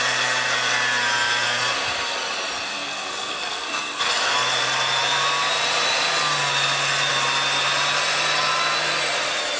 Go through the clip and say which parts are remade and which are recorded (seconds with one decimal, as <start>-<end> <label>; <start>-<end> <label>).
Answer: 0.0-2.7 recorded; 2.7-4.0 remade; 4.0-9.6 recorded